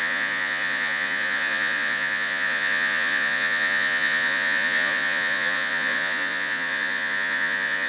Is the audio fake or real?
fake